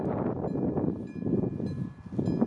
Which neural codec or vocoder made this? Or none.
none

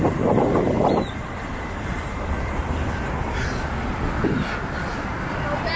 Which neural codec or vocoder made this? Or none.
none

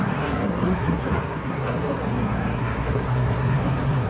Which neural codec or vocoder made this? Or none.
codec, SNAC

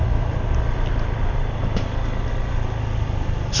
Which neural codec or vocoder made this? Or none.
none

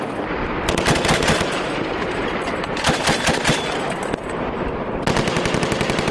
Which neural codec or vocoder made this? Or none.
none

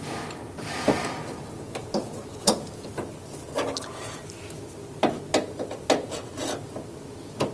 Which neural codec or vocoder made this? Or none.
none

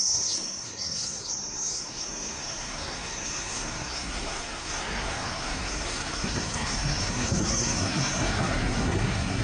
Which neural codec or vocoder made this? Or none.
codec, SNAC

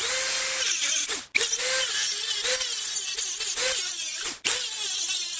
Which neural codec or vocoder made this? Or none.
none